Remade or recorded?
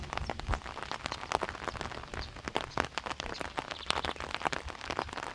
recorded